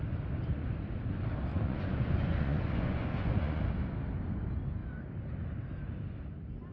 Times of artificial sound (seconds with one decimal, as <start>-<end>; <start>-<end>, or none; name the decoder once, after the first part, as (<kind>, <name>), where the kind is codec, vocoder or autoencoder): 1.5-3.6 (vocoder, Vocos)